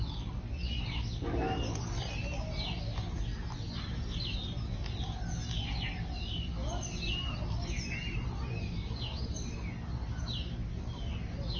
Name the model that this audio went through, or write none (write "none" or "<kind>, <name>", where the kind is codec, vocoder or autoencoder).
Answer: none